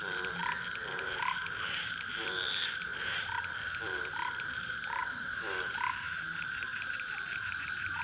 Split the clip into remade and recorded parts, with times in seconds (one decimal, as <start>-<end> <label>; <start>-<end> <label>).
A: 0.0-0.4 remade; 0.4-1.0 recorded; 1.0-2.9 remade; 2.9-3.8 recorded; 3.8-5.0 remade; 5.0-5.6 recorded; 5.6-8.0 remade